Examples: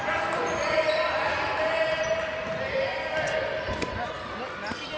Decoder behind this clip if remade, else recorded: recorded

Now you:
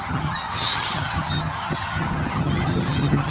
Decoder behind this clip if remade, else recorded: remade, vocoder, HiFi-GAN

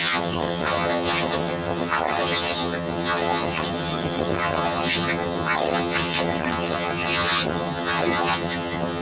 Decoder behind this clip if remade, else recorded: remade, vocoder, HiFi-GAN